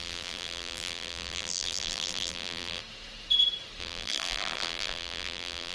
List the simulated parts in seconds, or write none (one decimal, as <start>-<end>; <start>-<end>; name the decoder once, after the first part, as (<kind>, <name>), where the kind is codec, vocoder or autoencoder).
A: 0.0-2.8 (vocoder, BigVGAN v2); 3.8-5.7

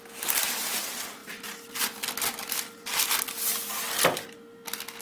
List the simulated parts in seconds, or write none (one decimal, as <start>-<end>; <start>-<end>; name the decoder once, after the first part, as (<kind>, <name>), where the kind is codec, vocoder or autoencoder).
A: none

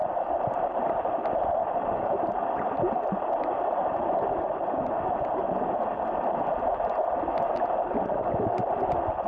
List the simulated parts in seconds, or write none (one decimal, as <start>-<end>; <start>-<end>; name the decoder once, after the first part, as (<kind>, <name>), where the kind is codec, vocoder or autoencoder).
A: 0.0-2.9 (vocoder, BigVGAN v2)

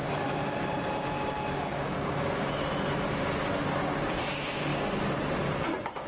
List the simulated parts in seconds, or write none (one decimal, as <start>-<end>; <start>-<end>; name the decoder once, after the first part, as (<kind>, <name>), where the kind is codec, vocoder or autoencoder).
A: 0.0-0.8 (vocoder, BigVGAN v2)

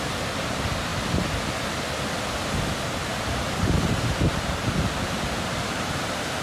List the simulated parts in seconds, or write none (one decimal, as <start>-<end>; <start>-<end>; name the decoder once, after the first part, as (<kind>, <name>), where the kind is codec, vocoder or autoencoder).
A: 3.1-6.4 (vocoder, BigVGAN v2)

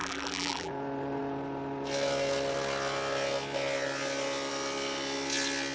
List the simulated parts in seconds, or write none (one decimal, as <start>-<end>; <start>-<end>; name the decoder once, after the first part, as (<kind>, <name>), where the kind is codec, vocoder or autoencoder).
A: 0.0-0.7 (vocoder, BigVGAN v2)